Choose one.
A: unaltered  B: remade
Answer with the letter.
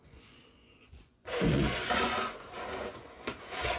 B